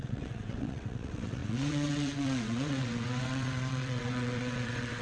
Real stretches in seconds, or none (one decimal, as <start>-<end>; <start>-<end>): none